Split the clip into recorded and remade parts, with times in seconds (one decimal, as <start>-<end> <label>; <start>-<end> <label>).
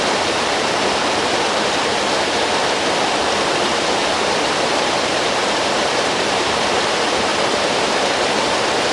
0.0-1.9 remade; 1.9-4.4 recorded; 4.4-7.3 remade; 7.3-8.4 recorded; 8.4-8.9 remade